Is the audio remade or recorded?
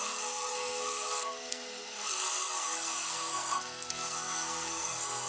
remade